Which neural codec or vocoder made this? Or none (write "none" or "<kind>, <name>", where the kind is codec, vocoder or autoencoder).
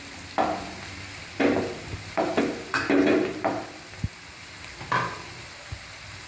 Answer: none